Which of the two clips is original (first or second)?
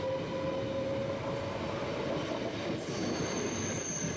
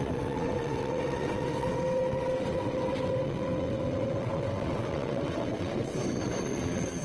first